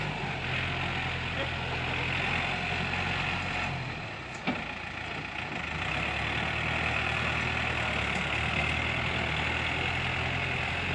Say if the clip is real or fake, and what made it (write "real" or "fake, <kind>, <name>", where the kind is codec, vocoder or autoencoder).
real